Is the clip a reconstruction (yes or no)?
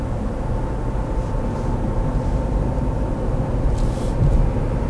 no